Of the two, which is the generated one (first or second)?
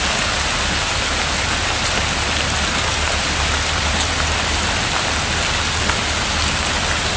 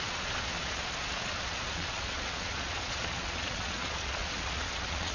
second